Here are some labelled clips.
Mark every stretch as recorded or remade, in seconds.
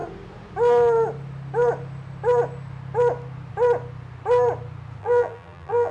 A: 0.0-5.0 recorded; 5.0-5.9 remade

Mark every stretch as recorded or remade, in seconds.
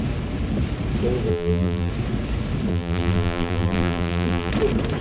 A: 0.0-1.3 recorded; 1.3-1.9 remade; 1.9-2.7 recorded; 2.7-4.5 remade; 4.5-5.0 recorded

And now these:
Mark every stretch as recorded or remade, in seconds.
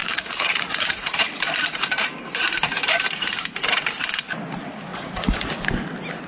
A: 0.0-1.3 remade; 1.3-4.9 recorded; 4.9-5.5 remade; 5.5-6.3 recorded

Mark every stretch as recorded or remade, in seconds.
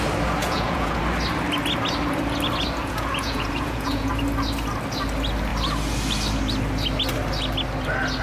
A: 0.0-0.4 recorded; 0.4-1.0 remade; 1.0-2.8 recorded; 2.8-4.1 remade; 4.1-8.2 recorded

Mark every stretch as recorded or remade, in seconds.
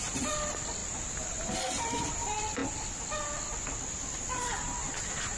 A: 0.0-0.8 remade; 0.8-1.8 recorded; 1.8-2.6 remade; 2.6-4.4 recorded; 4.4-5.4 remade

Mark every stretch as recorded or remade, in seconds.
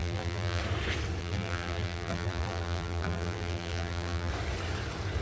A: 0.0-0.6 remade; 0.6-1.2 recorded; 1.2-4.3 remade; 4.3-5.2 recorded